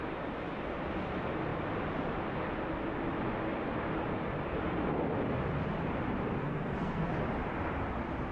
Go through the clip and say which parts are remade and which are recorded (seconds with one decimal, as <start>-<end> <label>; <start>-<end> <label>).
0.0-6.4 recorded; 6.4-7.1 remade; 7.1-8.3 recorded